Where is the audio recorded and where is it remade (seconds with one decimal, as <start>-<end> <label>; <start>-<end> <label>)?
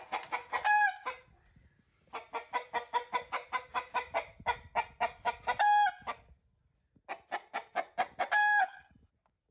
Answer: 0.0-8.6 recorded; 8.6-9.1 remade; 9.1-9.5 recorded